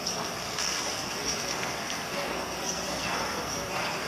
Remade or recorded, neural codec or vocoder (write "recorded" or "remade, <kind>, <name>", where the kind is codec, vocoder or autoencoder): remade, codec, SNAC